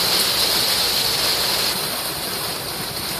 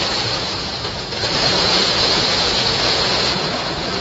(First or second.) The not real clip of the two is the second